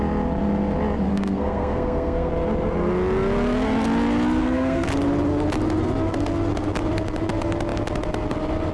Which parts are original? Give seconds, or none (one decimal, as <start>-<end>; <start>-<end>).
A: 0.0-1.1; 2.3-4.4; 4.9-8.7